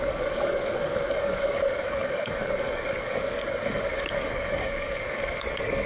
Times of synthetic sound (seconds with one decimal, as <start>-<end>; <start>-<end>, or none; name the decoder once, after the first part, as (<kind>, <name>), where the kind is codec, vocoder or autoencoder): 0.0-5.9 (codec, DAC)